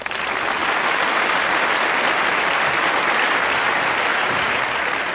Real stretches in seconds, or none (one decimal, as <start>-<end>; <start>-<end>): 0.0-4.1; 4.6-5.1

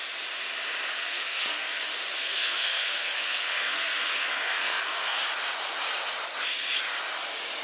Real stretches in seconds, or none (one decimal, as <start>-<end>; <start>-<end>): 0.0-1.0; 1.8-2.2; 5.2-7.6